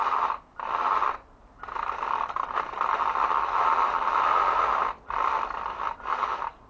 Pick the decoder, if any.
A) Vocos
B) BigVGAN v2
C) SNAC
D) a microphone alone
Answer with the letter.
B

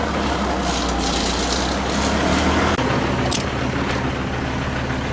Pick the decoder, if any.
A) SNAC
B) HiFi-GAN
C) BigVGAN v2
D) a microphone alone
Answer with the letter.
D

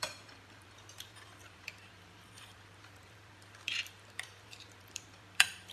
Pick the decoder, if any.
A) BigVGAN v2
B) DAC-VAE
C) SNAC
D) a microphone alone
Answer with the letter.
A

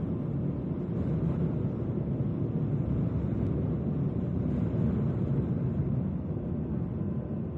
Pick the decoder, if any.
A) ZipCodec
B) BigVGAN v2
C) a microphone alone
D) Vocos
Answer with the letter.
C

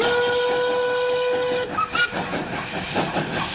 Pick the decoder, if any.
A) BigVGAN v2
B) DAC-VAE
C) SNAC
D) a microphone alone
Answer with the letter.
D